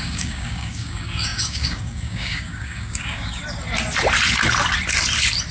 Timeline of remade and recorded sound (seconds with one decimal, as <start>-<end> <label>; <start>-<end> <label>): 0.0-3.4 remade; 3.4-5.5 recorded